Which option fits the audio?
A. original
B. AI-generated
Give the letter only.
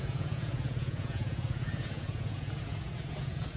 B